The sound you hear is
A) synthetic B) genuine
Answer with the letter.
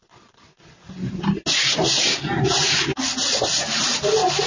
B